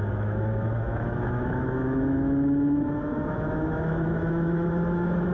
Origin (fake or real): fake